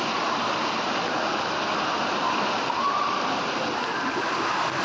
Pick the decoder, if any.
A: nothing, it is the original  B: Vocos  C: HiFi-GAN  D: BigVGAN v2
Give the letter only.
A